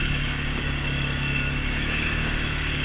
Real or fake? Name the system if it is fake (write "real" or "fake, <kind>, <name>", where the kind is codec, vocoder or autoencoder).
fake, codec, DAC